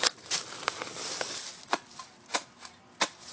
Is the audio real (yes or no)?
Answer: yes